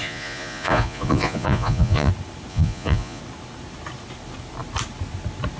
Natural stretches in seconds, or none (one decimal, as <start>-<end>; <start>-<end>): 2.1-2.5; 3.2-5.6